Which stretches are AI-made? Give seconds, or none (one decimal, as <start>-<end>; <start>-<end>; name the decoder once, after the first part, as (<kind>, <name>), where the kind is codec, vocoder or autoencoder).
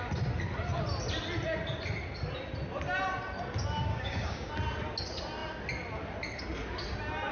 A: 3.9-4.5 (codec, DAC)